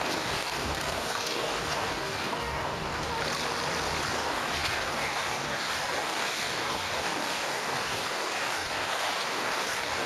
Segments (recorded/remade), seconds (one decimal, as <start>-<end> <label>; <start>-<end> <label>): 0.0-3.1 remade; 3.1-4.1 recorded; 4.1-10.1 remade